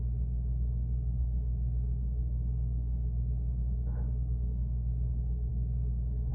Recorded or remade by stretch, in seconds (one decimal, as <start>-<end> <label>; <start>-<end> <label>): 0.0-6.3 recorded

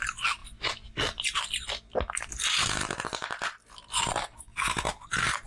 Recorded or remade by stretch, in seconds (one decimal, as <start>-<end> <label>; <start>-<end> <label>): 0.0-5.5 recorded

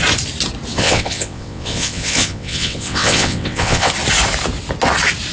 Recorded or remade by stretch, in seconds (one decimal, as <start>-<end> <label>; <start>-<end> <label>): 0.0-0.7 recorded; 0.7-3.9 remade; 3.9-5.3 recorded

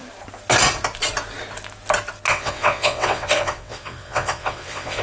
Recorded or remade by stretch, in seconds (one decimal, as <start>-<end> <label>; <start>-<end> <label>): 0.0-2.3 recorded; 2.3-5.0 remade

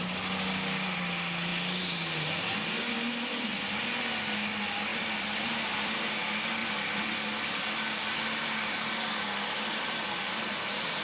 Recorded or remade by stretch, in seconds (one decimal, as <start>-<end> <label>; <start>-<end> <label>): 0.0-4.9 recorded; 4.9-5.7 remade; 5.7-6.6 recorded; 6.6-7.7 remade; 7.7-11.0 recorded

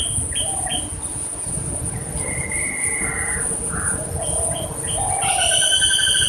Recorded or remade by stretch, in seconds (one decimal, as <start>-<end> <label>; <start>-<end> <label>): 0.0-6.3 recorded

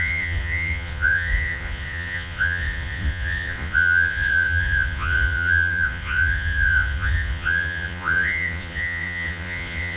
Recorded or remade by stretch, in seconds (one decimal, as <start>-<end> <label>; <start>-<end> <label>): 0.0-10.0 remade

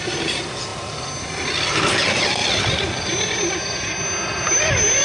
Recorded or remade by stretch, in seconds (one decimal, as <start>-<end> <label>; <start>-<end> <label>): 0.0-5.0 recorded